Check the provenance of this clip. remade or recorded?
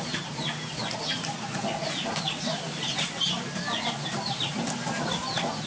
recorded